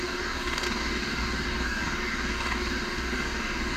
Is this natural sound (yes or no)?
no